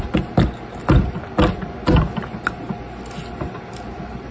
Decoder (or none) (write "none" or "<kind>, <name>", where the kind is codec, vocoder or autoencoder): none